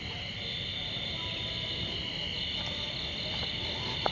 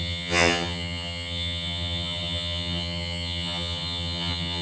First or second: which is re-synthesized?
second